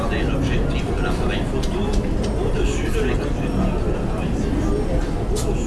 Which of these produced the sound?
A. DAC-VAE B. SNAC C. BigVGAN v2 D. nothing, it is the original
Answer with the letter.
D